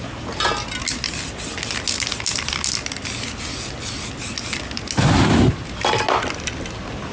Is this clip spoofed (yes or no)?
no